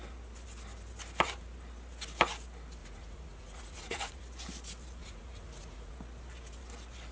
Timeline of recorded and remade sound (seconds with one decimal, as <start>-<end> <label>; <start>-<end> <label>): 0.0-2.8 recorded; 2.8-4.2 remade; 4.2-5.0 recorded; 5.0-5.9 remade; 5.9-7.1 recorded